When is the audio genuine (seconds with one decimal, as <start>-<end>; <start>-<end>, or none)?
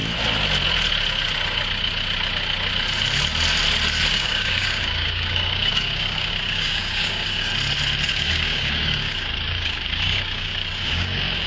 0.0-4.1; 7.5-8.1